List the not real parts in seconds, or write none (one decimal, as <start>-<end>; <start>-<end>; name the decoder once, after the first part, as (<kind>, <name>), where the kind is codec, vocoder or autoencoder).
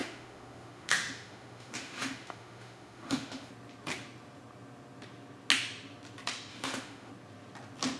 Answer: 0.0-3.5 (autoencoder, DAC-VAE); 6.5-7.1